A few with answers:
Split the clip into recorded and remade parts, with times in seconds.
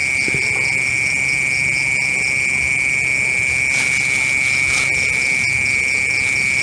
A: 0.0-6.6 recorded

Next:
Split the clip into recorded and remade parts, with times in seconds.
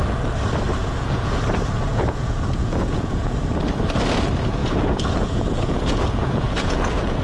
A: 0.0-0.8 recorded; 0.8-1.4 remade; 1.4-1.9 recorded; 1.9-3.4 remade; 3.4-4.6 recorded; 4.6-7.2 remade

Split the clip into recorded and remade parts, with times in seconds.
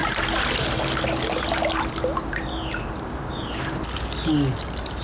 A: 0.0-5.0 recorded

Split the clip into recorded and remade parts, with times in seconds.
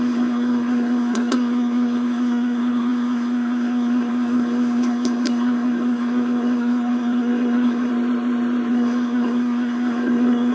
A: 0.0-7.9 remade; 7.9-8.7 recorded; 8.7-10.5 remade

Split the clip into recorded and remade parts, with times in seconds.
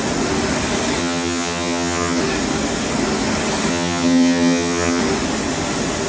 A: 0.0-1.0 recorded; 1.0-2.2 remade; 2.2-3.7 recorded; 3.7-5.0 remade; 5.0-6.1 recorded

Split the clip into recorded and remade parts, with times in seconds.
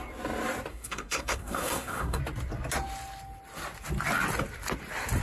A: 0.0-0.7 recorded; 0.7-2.2 remade; 2.2-5.2 recorded